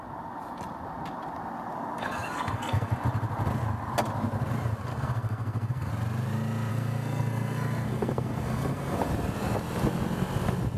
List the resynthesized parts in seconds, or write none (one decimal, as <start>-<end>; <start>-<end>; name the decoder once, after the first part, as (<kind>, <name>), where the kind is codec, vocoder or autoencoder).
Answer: 2.0-2.9 (codec, SNAC); 4.9-5.9; 6.7-9.1

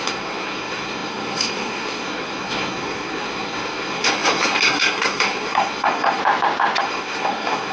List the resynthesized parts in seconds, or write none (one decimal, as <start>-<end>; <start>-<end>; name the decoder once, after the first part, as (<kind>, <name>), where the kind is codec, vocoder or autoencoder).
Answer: 0.0-6.2 (codec, SNAC); 6.8-7.7

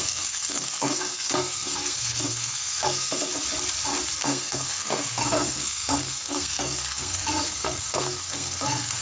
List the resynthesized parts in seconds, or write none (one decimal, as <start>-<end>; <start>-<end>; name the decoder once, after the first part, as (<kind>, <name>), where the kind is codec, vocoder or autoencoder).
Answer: 0.0-3.3 (codec, SNAC); 4.2-9.0

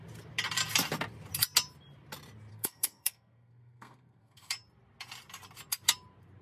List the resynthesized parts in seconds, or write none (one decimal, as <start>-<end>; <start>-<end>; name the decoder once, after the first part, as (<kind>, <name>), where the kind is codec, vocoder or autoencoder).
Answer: 2.5-4.5 (codec, SNAC)

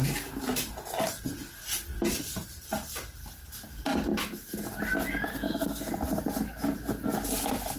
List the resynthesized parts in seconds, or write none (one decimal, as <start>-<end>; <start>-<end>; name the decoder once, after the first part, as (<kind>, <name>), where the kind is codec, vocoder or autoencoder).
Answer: 5.3-5.9 (codec, SNAC)